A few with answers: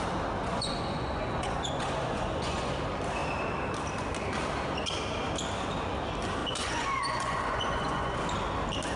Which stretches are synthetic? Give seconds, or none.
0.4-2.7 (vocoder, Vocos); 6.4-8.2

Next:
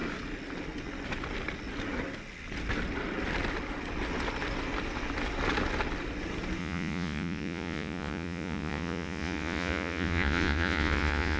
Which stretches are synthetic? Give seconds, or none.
6.6-11.4 (vocoder, Vocos)

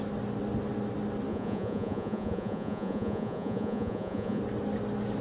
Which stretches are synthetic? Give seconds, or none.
1.3-4.4 (vocoder, Vocos)

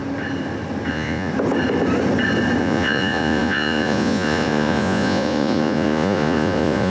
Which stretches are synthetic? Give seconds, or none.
0.9-1.3 (vocoder, Vocos); 2.6-6.9

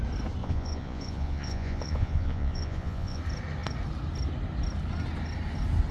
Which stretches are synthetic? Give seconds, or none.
0.4-3.2 (vocoder, Vocos)

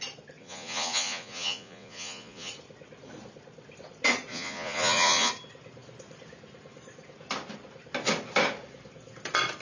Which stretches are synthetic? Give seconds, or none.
0.4-2.5 (vocoder, Vocos); 4.3-5.3